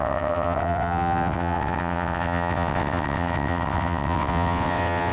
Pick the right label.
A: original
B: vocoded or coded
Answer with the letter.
B